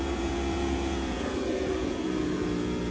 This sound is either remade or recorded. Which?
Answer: remade